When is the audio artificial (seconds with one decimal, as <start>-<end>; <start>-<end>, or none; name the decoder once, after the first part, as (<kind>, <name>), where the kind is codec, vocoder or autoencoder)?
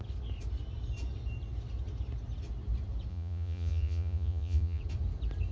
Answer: 3.1-4.8 (vocoder, Vocos)